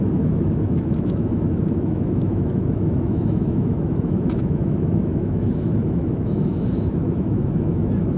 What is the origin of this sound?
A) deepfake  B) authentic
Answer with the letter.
A